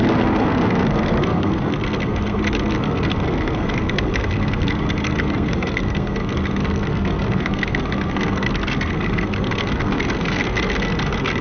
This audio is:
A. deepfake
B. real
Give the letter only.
A